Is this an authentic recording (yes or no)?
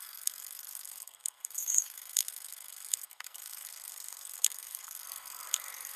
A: no